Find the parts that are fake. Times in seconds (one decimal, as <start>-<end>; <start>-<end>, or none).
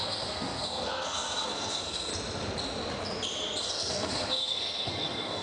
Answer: 0.0-2.1; 3.6-5.4